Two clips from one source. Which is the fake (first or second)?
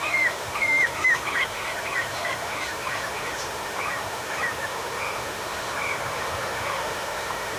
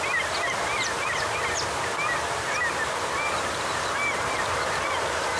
first